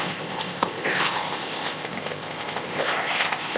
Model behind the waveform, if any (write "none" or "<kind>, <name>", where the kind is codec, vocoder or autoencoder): codec, ZipCodec